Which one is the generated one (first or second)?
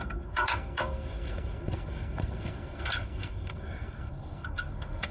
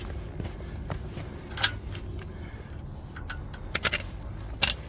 first